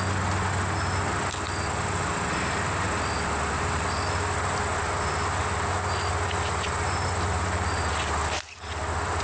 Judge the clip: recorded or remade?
recorded